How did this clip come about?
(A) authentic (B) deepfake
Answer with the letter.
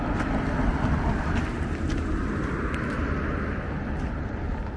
A